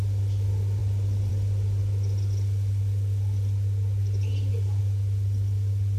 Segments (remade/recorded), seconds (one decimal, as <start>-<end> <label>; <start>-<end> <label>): 0.0-6.0 recorded